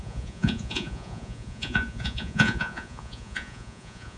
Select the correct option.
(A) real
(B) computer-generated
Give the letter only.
B